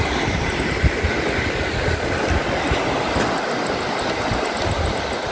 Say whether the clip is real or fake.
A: real